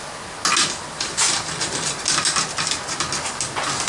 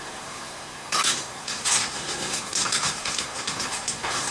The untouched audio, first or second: first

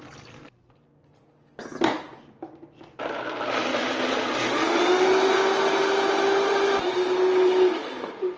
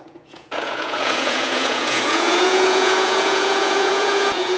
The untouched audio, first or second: first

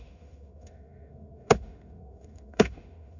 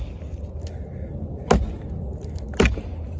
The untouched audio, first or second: second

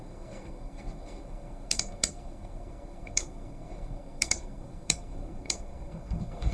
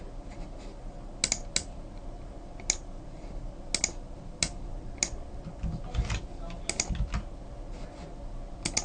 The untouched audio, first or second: second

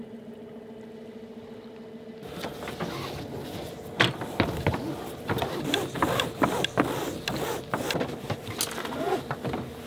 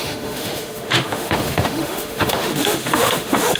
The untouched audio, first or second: first